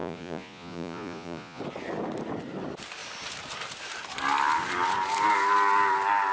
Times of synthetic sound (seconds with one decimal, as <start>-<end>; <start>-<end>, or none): 0.0-1.6